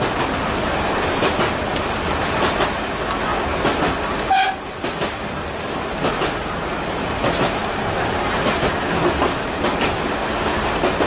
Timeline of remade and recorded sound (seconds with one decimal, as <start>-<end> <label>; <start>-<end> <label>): 0.0-11.1 recorded